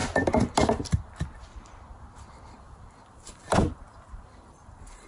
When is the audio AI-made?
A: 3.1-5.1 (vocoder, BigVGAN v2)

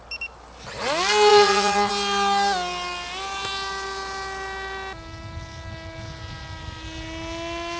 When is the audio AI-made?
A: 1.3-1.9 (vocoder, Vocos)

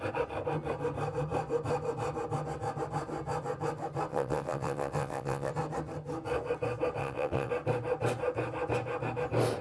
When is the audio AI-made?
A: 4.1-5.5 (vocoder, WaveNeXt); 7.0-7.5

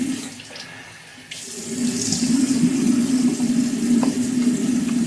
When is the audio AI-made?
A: none

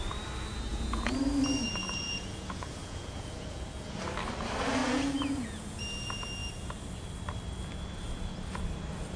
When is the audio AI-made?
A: 0.7-1.2 (vocoder, Vocos); 1.8-4.0; 4.8-5.8

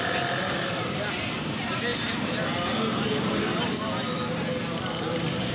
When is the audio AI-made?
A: none